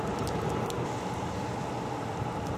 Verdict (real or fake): fake